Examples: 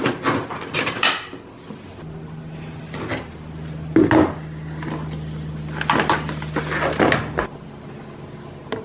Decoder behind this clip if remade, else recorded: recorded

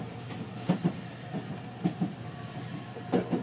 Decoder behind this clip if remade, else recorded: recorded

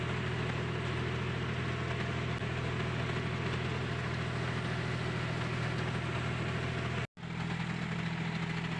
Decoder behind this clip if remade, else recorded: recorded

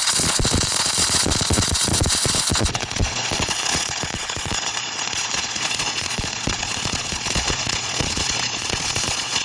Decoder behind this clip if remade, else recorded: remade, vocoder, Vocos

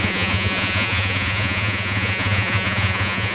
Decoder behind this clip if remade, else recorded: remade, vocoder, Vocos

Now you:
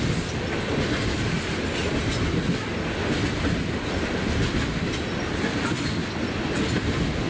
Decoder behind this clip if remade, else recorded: recorded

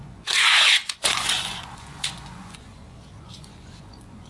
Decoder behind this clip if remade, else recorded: remade, vocoder, Vocos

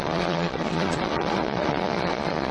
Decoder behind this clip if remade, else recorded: remade, vocoder, Vocos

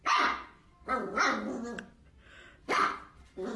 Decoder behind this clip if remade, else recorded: recorded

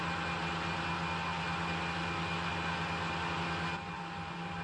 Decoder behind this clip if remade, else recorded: recorded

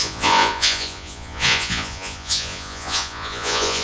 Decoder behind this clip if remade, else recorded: remade, vocoder, Vocos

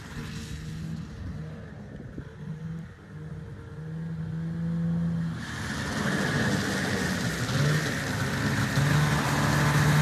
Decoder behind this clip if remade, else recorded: recorded